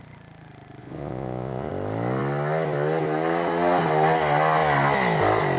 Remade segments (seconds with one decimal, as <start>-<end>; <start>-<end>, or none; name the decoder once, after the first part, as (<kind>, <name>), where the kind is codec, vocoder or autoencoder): 0.8-1.7 (vocoder, Vocos)